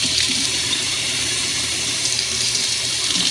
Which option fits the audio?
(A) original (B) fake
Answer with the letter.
B